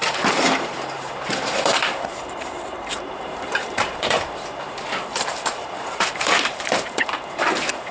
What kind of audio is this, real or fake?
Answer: fake